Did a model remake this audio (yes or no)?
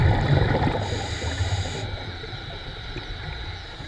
no